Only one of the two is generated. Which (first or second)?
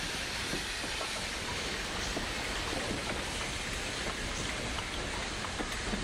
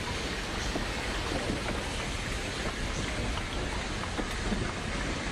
first